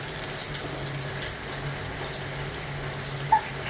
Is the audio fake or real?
real